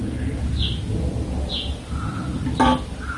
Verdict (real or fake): real